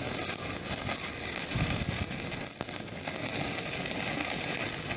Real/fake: real